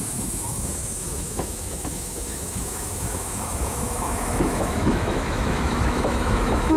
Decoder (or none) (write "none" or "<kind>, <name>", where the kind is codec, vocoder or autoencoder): autoencoder, DAC-VAE